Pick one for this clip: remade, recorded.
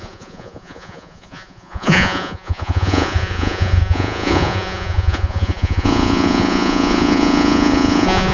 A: remade